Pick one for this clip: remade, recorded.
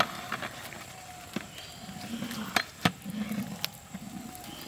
recorded